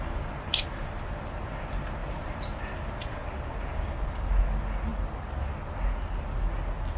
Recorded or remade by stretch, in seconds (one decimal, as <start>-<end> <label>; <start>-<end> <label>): 0.0-2.0 recorded; 2.0-2.6 remade; 2.6-7.0 recorded